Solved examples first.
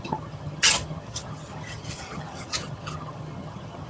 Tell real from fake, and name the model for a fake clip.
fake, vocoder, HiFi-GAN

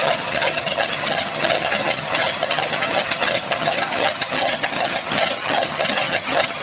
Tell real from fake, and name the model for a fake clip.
fake, vocoder, HiFi-GAN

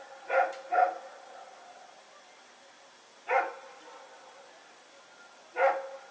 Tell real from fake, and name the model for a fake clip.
real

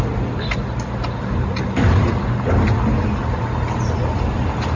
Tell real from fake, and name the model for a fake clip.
real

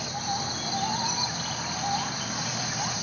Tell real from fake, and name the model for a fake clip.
real